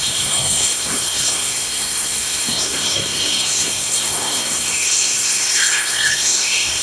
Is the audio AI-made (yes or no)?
yes